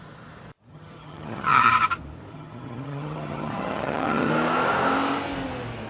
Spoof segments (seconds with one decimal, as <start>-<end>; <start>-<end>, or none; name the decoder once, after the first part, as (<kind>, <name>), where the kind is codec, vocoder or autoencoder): 0.7-1.7 (vocoder, HiFi-GAN); 2.3-4.3